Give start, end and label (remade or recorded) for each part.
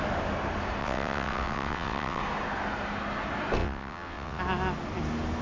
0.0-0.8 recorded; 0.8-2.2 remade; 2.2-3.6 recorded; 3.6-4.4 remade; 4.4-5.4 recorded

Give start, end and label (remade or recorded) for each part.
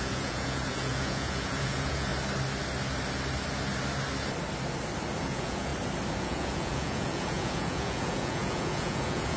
0.0-2.1 remade; 2.1-5.2 recorded; 5.2-5.7 remade; 5.7-6.2 recorded; 6.2-9.4 remade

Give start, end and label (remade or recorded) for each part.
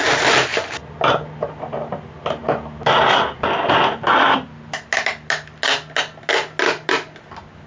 0.0-7.7 recorded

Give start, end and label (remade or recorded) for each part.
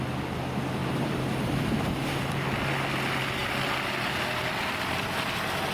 0.0-0.8 recorded; 0.8-2.2 remade; 2.2-5.7 recorded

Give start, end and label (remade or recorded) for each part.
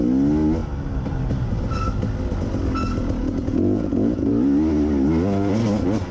0.0-3.2 recorded; 3.2-4.3 remade; 4.3-6.1 recorded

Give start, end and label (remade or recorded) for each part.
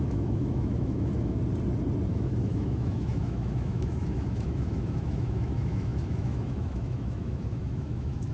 0.0-1.4 remade; 1.4-2.1 recorded; 2.1-8.3 remade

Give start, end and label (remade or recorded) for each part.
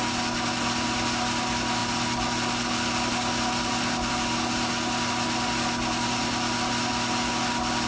0.0-7.9 recorded